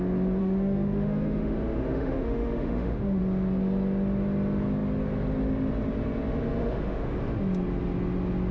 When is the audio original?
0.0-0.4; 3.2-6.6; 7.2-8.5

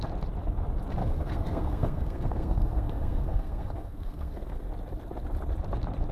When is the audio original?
0.0-1.0; 4.7-6.1

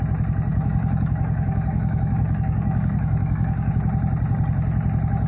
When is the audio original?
0.0-0.5; 3.7-5.3

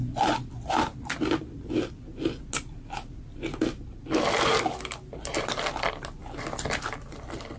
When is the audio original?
0.0-7.6